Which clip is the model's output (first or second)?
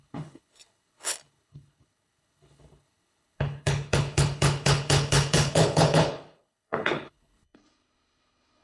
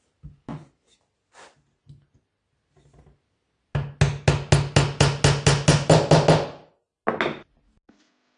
first